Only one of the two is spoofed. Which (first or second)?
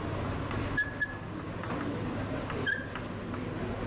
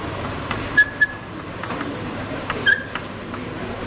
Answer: second